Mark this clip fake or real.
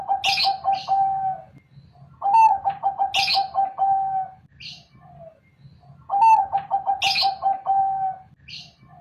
real